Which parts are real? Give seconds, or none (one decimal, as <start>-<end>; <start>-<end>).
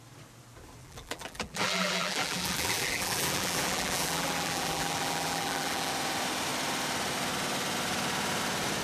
0.0-0.8; 5.9-8.8